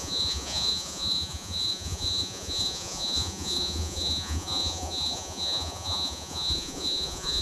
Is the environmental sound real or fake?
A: fake